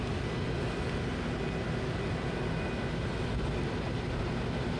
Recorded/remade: recorded